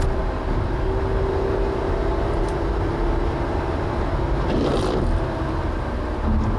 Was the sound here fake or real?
real